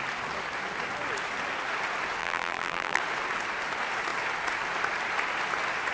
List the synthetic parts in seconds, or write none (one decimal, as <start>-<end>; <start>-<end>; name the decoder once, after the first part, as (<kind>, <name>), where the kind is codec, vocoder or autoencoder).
2.2-3.0 (vocoder, BigVGAN v2)